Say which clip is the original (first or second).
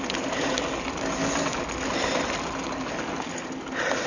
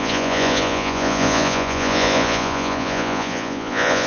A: first